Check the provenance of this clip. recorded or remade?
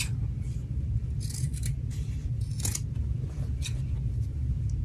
recorded